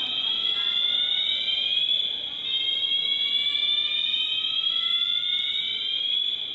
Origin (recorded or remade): recorded